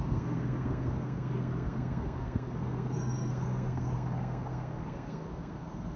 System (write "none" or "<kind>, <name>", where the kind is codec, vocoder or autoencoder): codec, SNAC